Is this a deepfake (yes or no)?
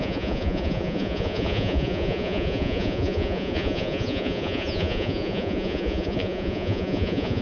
yes